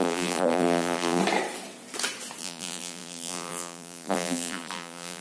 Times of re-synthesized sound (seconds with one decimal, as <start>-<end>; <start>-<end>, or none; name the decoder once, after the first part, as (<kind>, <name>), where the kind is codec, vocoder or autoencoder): 0.0-1.2 (vocoder, BigVGAN v2); 2.4-5.2